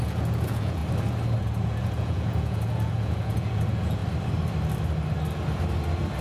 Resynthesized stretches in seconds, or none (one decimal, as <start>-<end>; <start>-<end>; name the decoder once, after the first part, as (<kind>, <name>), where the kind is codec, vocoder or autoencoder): 0.0-0.8 (vocoder, Vocos); 1.4-4.0